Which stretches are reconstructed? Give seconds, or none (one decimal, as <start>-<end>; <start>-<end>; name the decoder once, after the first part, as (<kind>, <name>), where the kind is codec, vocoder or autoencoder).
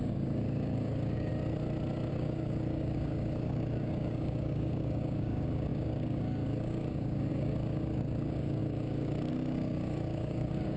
0.0-1.3 (codec, DAC); 2.1-10.8